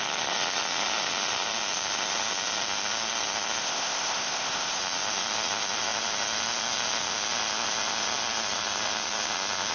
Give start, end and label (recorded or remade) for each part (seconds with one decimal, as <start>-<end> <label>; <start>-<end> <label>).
0.0-3.6 recorded; 3.6-4.8 remade; 4.8-9.7 recorded